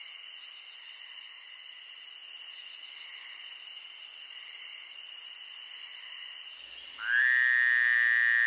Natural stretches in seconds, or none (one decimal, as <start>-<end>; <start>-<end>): 0.0-8.5